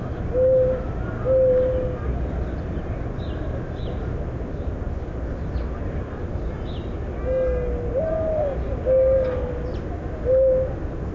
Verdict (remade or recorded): recorded